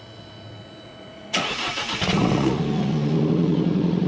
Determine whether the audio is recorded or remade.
remade